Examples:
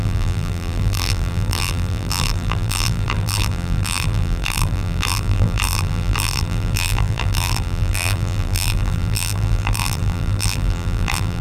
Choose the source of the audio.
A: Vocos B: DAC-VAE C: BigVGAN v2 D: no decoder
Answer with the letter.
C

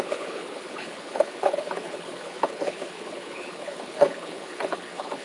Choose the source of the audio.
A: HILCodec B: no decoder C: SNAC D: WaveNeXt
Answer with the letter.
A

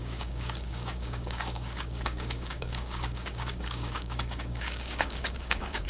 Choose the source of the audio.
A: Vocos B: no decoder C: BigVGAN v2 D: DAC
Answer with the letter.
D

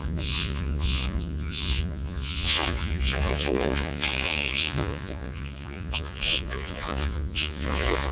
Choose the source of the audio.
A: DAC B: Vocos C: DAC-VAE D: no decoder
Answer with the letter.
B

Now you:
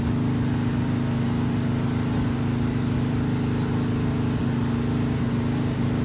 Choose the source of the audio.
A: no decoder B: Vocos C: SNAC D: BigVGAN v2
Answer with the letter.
A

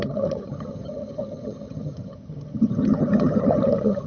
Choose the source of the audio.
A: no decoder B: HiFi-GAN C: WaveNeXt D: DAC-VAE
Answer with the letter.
B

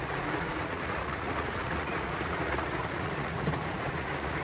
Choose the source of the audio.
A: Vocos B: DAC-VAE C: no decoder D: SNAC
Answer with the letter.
A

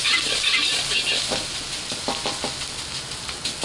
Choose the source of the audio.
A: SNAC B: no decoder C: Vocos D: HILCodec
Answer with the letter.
B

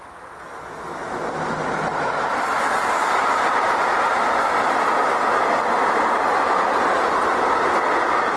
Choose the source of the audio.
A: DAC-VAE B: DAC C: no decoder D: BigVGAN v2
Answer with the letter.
C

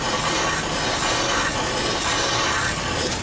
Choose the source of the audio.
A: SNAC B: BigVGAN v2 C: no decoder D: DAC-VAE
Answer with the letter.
C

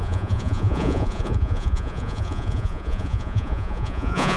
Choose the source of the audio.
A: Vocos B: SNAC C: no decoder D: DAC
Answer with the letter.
A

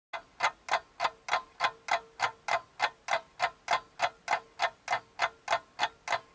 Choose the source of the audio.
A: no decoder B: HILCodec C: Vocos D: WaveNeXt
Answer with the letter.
A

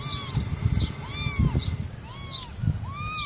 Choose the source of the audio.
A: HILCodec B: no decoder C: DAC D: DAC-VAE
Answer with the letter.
B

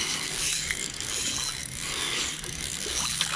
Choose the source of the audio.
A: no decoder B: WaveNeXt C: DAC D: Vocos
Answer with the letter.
C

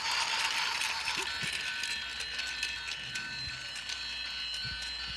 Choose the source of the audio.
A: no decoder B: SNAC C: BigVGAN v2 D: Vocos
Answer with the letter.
A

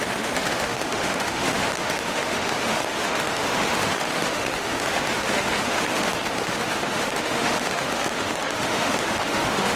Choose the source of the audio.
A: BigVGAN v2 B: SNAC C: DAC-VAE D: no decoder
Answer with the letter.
C